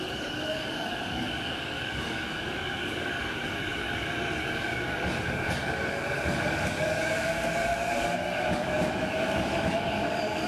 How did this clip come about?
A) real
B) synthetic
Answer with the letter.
B